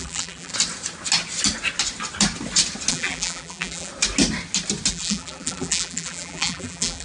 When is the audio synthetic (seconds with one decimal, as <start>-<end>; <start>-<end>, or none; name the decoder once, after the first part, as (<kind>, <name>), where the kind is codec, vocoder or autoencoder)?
0.0-0.5 (vocoder, BigVGAN v2); 2.9-3.9; 4.9-7.0